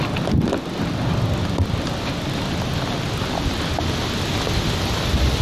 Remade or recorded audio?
recorded